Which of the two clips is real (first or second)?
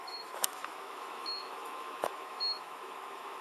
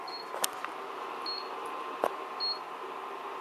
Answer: second